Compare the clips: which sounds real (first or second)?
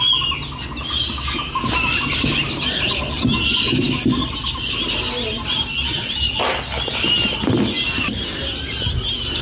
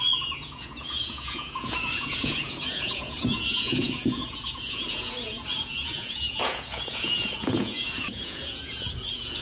first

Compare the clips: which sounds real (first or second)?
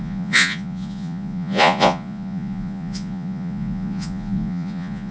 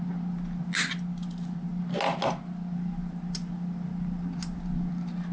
second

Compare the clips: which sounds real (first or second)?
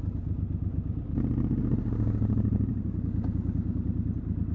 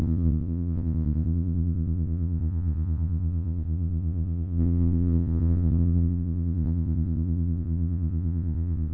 first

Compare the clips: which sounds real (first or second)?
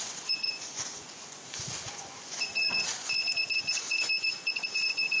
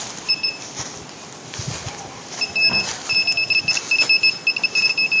second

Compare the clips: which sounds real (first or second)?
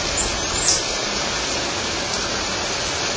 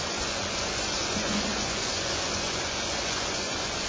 first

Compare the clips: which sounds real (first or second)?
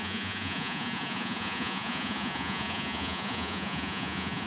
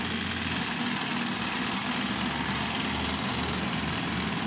second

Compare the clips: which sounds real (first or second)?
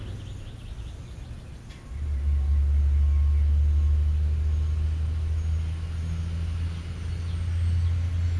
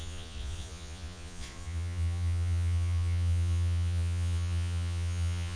first